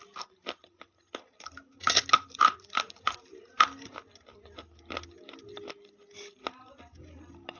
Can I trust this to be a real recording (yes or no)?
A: yes